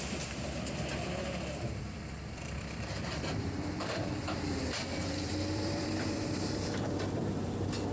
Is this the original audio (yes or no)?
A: no